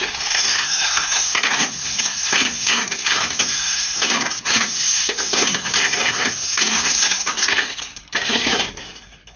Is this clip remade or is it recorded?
remade